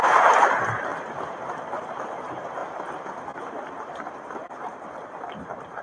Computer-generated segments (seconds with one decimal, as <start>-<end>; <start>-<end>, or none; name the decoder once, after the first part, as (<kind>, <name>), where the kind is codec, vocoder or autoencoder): 0.0-2.6 (vocoder, BigVGAN v2); 3.5-5.8